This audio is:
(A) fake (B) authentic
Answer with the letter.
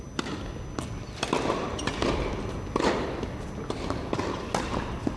B